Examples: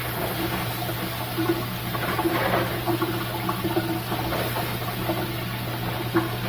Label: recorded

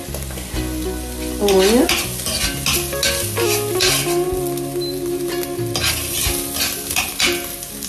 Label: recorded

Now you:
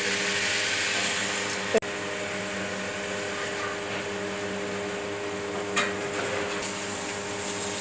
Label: recorded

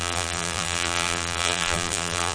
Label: remade